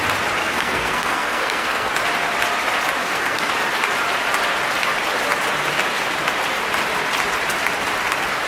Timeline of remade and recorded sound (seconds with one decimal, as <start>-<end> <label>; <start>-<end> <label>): 0.0-0.4 recorded; 0.4-1.9 remade; 1.9-3.0 recorded; 3.0-3.5 remade; 3.5-8.5 recorded